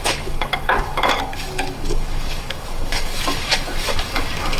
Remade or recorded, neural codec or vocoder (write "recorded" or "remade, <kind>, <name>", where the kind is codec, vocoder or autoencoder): remade, codec, DAC